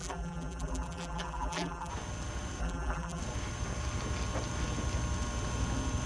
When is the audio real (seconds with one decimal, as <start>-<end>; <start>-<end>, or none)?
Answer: 1.9-2.6; 3.2-6.1